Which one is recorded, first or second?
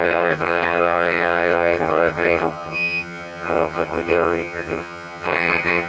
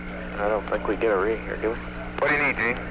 second